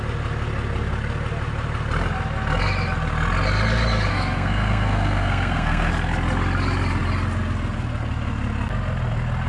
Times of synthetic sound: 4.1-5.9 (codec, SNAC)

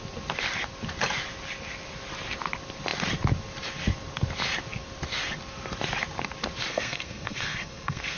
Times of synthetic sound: 6.7-8.2 (codec, SNAC)

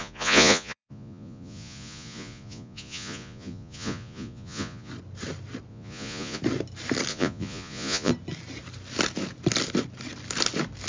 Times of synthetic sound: 0.0-4.9 (vocoder, Vocos); 5.7-6.4; 7.1-8.1

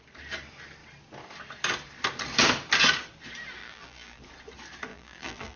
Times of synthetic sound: 3.6-4.2 (vocoder, BigVGAN v2); 4.9-5.6

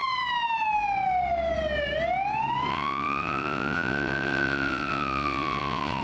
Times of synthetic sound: 2.7-6.0 (vocoder, WaveNeXt)

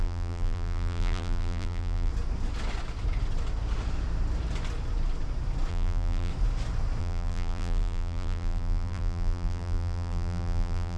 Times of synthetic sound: 0.0-2.1 (vocoder, BigVGAN v2); 5.7-6.3; 7.0-11.0

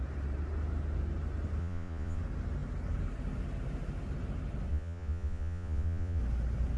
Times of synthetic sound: 1.6-2.2 (vocoder, Vocos); 4.7-6.2